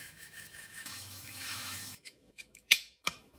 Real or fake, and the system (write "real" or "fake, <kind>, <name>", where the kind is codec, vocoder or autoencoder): fake, autoencoder, DAC-VAE